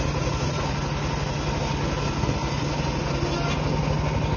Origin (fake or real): real